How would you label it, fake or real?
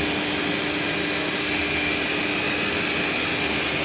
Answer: real